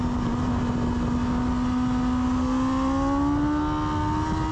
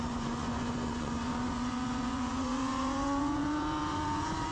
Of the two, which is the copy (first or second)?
second